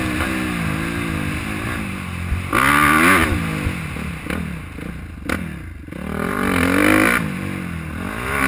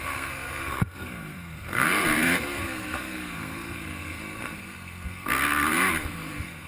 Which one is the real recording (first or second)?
first